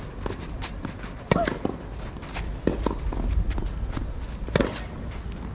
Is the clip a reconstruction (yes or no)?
no